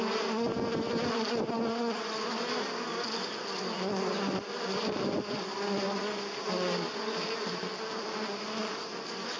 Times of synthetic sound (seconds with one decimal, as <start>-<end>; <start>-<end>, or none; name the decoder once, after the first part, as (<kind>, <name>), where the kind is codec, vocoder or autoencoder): none